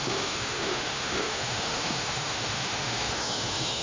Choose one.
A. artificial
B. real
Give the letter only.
A